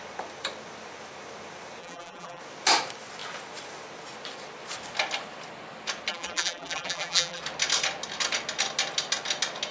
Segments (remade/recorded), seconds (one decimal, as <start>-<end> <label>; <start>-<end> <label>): 0.0-1.8 recorded; 1.8-2.4 remade; 2.4-6.1 recorded; 6.1-7.4 remade; 7.4-9.7 recorded